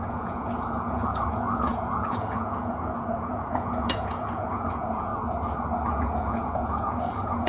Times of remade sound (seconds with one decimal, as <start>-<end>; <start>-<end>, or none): 0.0-5.1; 5.9-7.5